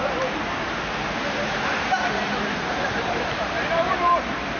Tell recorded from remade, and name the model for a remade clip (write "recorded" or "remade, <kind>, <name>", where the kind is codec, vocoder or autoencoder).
remade, vocoder, BigVGAN v2